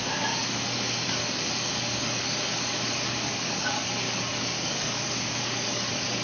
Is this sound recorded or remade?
remade